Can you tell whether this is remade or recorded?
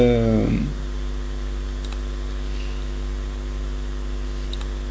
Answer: recorded